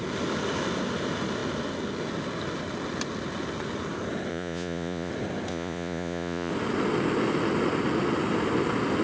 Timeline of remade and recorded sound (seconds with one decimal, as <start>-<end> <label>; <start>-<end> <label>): 0.0-4.3 recorded; 4.3-5.1 remade; 5.1-5.5 recorded; 5.5-6.5 remade; 6.5-9.0 recorded